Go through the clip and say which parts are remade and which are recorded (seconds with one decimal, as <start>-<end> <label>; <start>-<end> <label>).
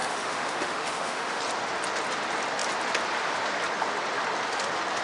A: 0.0-1.4 remade; 1.4-5.0 recorded